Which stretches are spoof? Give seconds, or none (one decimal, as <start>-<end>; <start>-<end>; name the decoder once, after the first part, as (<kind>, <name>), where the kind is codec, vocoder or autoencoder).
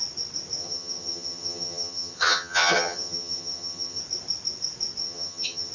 0.6-4.0 (vocoder, HiFi-GAN); 5.0-5.7